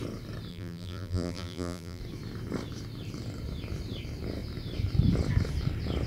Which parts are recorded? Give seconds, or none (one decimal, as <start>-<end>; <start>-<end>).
0.0-0.5; 2.0-6.1